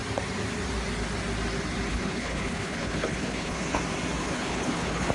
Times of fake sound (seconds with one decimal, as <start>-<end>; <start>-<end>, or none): 1.9-3.8; 4.2-5.1

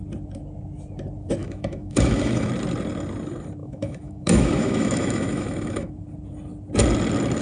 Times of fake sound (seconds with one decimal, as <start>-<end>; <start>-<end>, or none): 1.4-2.5; 3.6-5.9